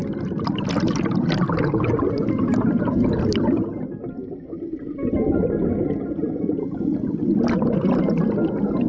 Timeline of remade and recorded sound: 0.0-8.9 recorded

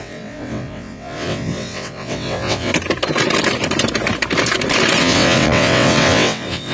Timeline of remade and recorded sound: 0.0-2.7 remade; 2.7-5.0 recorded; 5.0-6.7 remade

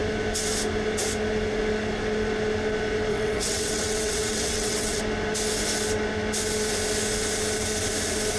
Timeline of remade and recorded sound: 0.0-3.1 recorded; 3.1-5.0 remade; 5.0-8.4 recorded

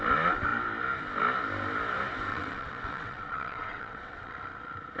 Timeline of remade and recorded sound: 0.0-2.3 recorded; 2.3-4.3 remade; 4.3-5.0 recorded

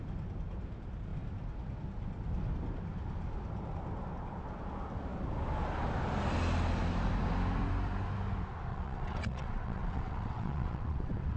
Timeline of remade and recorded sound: 0.0-8.7 recorded; 8.7-11.4 remade

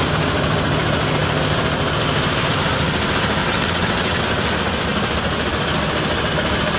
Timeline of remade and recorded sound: 0.0-3.4 recorded; 3.4-4.2 remade; 4.2-6.8 recorded

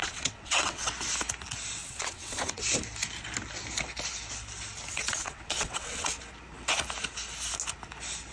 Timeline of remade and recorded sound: 0.0-0.9 remade; 0.9-1.8 recorded; 1.8-2.6 remade; 2.6-4.9 recorded; 4.9-6.2 remade; 6.2-8.3 recorded